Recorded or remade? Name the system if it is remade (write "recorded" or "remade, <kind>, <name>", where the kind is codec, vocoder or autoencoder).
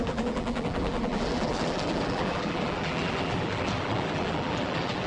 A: remade, vocoder, BigVGAN v2